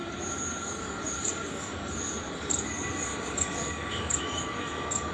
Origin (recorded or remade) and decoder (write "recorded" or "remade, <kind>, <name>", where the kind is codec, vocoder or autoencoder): remade, codec, DAC